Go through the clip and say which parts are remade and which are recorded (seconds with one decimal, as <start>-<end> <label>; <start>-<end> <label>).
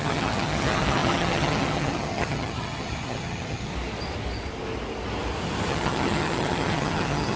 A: 0.0-3.7 remade; 3.7-5.7 recorded; 5.7-7.4 remade